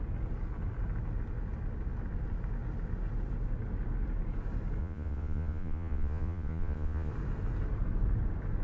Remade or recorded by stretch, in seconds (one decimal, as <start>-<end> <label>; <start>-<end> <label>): 0.0-4.8 recorded; 4.8-7.1 remade; 7.1-8.6 recorded